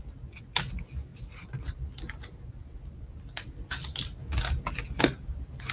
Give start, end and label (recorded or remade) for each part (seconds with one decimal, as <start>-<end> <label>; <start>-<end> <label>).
0.0-1.1 recorded; 1.1-1.9 remade; 1.9-2.6 recorded; 2.6-3.5 remade; 3.5-5.7 recorded